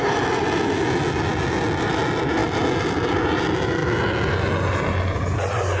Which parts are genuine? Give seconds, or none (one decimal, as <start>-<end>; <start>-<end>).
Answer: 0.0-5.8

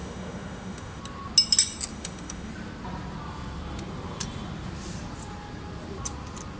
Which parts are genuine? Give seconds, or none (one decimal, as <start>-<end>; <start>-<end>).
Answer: 1.0-1.9; 2.5-6.6

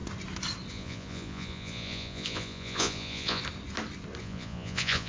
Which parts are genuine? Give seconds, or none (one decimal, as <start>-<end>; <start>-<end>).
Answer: 0.0-0.7; 3.4-4.2

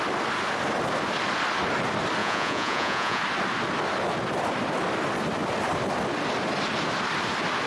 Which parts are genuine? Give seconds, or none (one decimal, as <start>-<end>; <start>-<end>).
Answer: 0.0-2.2; 3.2-7.7

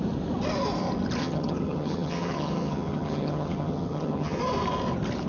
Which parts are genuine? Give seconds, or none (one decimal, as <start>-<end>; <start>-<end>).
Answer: 0.0-1.2; 4.4-5.3

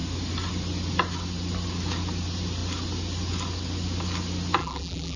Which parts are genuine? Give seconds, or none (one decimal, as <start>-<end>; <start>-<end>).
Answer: 0.0-4.6